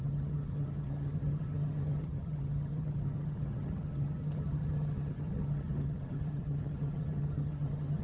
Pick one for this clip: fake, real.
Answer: fake